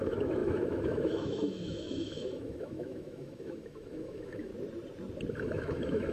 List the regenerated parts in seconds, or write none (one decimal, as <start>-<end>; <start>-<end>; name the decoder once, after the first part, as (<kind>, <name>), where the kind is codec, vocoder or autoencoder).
0.0-4.5 (autoencoder, DAC-VAE); 5.3-6.1